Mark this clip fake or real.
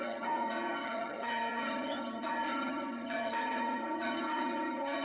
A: fake